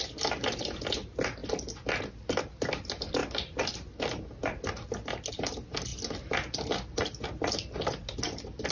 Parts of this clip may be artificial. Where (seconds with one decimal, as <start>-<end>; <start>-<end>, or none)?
none

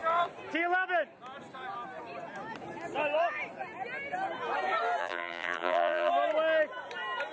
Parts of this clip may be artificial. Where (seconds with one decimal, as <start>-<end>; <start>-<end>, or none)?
5.0-6.1

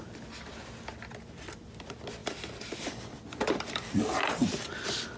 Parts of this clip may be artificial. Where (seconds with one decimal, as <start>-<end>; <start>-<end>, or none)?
2.2-5.2

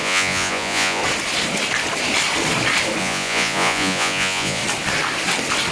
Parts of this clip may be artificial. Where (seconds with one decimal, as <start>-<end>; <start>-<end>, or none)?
0.0-1.0; 3.0-4.6

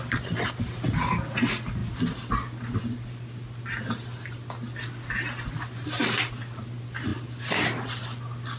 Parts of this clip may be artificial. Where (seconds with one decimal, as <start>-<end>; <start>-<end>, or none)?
none

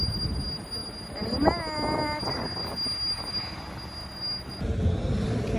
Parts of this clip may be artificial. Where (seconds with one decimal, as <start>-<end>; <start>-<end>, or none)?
4.0-4.6

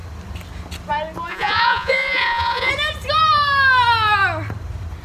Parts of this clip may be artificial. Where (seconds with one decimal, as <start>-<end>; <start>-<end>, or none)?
1.3-2.7

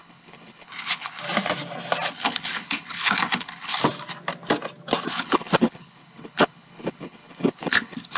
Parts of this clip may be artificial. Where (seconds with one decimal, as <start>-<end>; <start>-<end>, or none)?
0.0-1.2; 2.1-3.8; 5.1-8.2